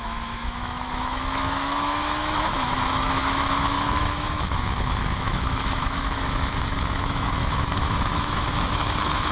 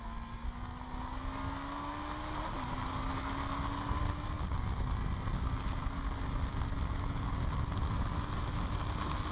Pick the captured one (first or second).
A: second